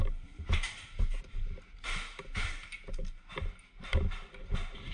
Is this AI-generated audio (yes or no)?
no